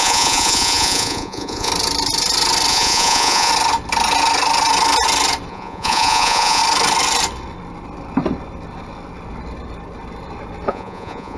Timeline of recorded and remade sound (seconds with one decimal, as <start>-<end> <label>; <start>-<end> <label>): 0.0-1.7 remade; 1.7-2.7 recorded; 2.7-3.5 remade; 3.5-5.5 recorded; 5.5-6.6 remade; 6.6-10.7 recorded; 10.7-11.4 remade